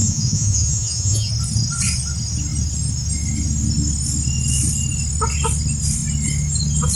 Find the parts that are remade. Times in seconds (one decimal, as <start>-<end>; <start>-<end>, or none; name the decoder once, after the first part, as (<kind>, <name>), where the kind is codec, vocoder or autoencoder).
0.0-1.3 (vocoder, Vocos)